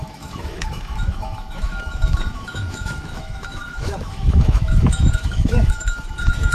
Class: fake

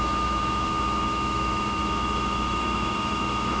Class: fake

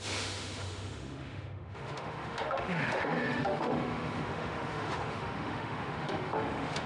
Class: fake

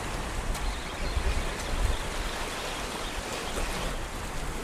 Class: real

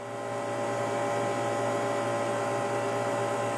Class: real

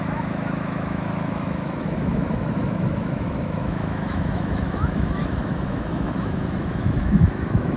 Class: fake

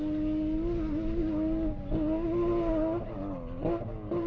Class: real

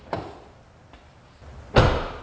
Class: real